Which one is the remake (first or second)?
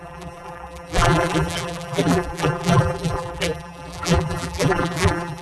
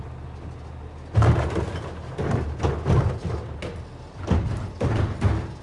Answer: first